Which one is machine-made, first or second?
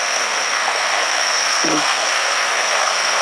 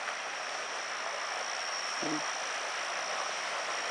first